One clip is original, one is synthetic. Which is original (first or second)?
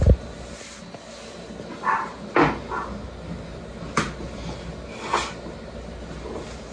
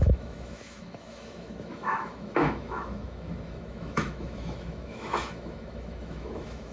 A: first